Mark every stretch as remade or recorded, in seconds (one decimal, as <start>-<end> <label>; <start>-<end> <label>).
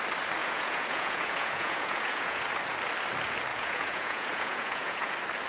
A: 0.0-0.4 recorded; 0.4-2.4 remade; 2.4-3.5 recorded; 3.5-5.1 remade; 5.1-5.5 recorded